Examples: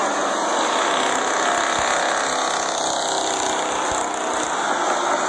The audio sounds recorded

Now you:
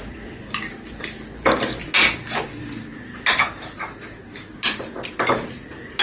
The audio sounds recorded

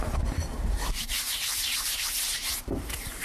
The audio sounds remade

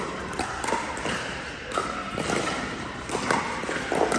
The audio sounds recorded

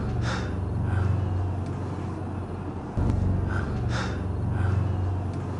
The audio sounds recorded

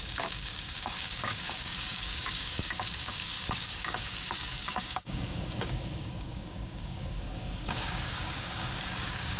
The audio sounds remade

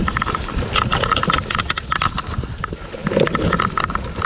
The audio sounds recorded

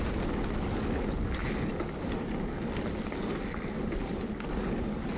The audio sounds recorded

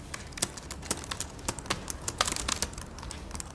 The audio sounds recorded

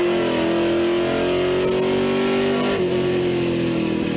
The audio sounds recorded